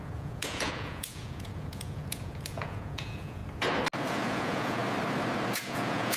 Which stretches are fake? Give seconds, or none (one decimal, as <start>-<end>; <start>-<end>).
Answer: 0.0-3.4; 4.1-4.8; 5.6-6.2